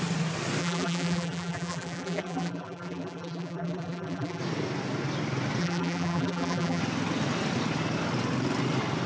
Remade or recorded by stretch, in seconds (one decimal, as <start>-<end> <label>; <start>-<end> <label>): 0.0-0.6 recorded; 0.6-4.4 remade; 4.4-5.6 recorded; 5.6-6.8 remade; 6.8-9.1 recorded